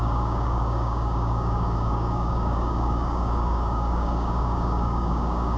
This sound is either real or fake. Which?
fake